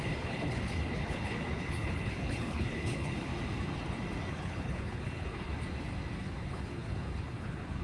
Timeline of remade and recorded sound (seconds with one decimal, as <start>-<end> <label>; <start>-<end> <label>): 0.0-3.3 remade; 3.3-4.3 recorded; 4.3-5.5 remade; 5.5-6.2 recorded; 6.2-7.8 remade